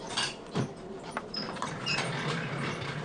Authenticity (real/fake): fake